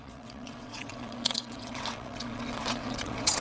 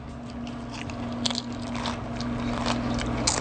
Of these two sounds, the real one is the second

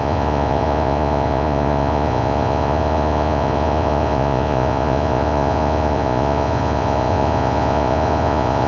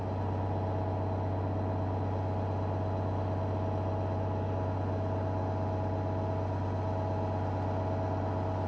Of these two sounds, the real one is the second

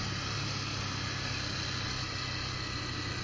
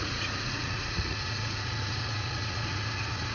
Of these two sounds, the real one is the first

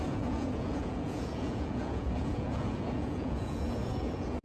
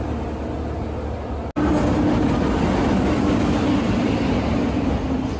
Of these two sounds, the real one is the second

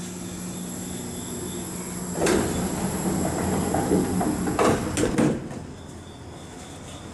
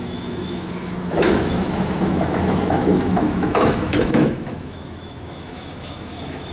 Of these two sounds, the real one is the first